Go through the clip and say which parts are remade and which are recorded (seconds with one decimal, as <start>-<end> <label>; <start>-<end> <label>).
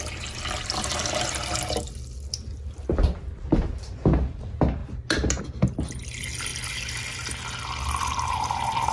0.0-8.9 recorded